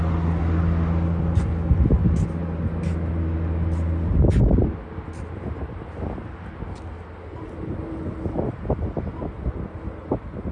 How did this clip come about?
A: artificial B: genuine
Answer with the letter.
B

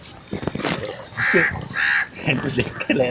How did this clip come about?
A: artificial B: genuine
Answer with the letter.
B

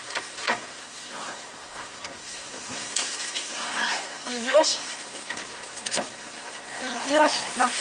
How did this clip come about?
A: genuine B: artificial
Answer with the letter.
B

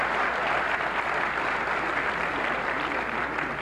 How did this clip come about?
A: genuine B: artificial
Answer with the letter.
A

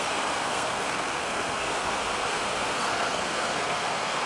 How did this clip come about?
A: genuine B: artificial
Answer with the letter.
B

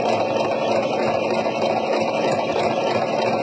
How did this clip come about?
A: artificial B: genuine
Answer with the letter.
B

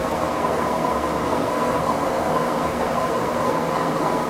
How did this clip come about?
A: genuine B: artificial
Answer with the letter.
B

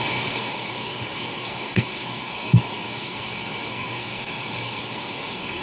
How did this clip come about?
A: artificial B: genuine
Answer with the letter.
A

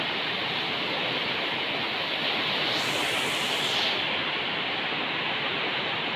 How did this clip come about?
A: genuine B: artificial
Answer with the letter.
A